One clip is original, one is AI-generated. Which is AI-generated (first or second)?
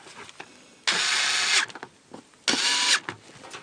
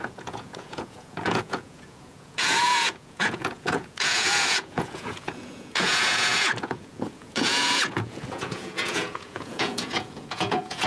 second